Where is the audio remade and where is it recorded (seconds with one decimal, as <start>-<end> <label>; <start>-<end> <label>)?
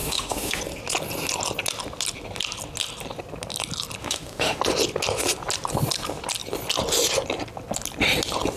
0.0-0.6 remade; 0.6-4.0 recorded; 4.0-4.6 remade; 4.6-8.6 recorded